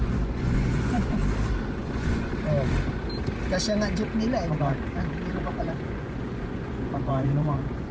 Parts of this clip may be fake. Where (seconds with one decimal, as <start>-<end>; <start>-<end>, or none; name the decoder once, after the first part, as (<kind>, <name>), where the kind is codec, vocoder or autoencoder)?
0.0-1.2 (vocoder, Vocos); 1.8-2.3; 5.3-7.9